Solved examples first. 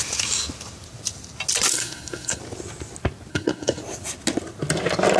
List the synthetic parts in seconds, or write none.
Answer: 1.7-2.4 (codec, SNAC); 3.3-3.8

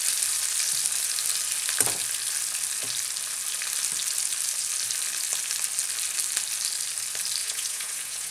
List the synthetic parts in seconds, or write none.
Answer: 7.4-8.3 (vocoder, Vocos)